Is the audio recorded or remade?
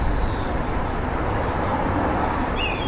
remade